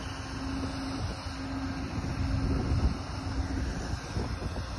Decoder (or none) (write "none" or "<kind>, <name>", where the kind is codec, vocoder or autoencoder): none